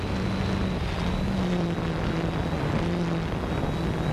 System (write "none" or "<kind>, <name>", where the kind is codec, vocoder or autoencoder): none